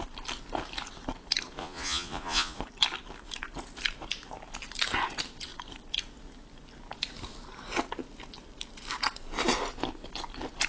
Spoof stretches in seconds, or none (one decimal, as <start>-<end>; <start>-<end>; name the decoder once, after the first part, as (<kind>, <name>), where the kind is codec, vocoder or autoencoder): 1.6-2.6 (vocoder, Vocos)